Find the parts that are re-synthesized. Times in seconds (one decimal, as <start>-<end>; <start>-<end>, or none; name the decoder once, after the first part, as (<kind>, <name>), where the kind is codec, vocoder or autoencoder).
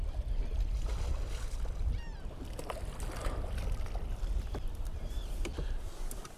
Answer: none